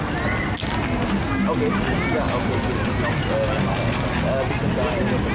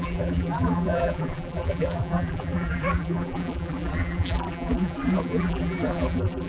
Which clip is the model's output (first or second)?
second